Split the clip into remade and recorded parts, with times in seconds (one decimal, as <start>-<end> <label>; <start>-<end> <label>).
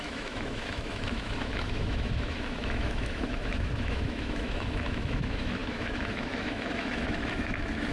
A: 0.0-7.9 remade